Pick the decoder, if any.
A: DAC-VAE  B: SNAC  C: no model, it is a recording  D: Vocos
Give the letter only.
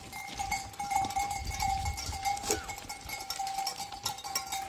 C